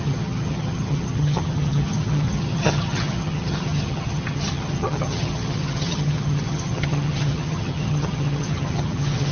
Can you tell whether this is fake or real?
fake